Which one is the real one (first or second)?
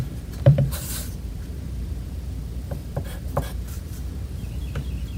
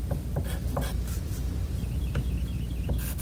second